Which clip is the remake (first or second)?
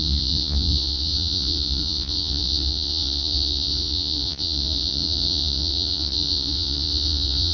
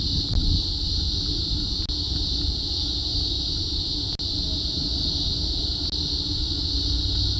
first